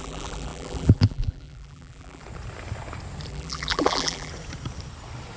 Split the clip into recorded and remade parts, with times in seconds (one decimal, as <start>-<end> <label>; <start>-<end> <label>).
0.0-2.2 remade; 2.2-3.3 recorded; 3.3-4.3 remade; 4.3-5.4 recorded